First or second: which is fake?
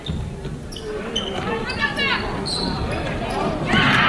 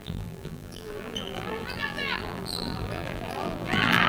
second